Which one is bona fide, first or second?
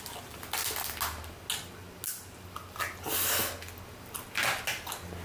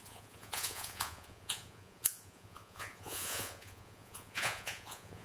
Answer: first